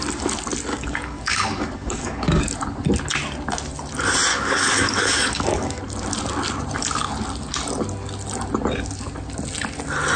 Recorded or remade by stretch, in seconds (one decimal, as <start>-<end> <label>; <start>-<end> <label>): 0.0-0.7 recorded; 0.7-2.4 remade; 2.4-4.3 recorded; 4.3-5.8 remade; 5.8-10.2 recorded

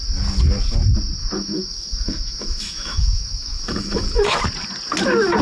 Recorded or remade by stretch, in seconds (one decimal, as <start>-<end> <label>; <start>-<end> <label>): 0.0-1.2 recorded; 1.2-4.4 remade; 4.4-5.4 recorded

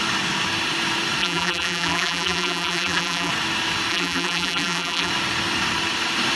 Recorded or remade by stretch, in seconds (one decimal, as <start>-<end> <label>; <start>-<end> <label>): 0.0-1.2 recorded; 1.2-3.3 remade; 3.3-3.9 recorded; 3.9-5.1 remade; 5.1-6.4 recorded

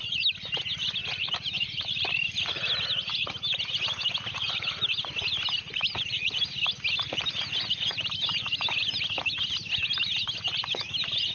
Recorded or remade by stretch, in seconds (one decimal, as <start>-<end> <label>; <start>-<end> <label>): 0.0-1.0 recorded; 1.0-2.1 remade; 2.1-11.3 recorded

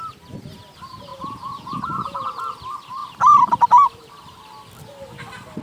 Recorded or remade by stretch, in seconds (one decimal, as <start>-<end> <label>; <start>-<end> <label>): 0.0-1.1 recorded; 1.1-2.4 remade; 2.4-5.6 recorded

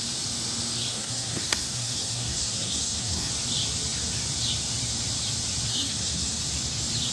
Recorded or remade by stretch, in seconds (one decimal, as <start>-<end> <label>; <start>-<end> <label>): 0.0-0.9 recorded; 0.9-3.3 remade; 3.3-5.7 recorded; 5.7-6.4 remade; 6.4-7.1 recorded

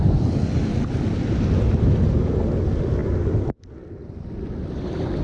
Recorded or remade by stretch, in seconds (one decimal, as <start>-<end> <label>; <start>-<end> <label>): 0.0-3.0 recorded; 3.0-3.6 remade; 3.6-5.2 recorded

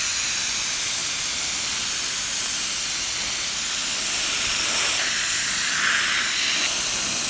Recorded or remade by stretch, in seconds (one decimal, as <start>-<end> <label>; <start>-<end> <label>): 0.0-7.3 recorded